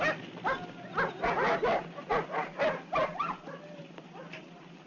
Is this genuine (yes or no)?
yes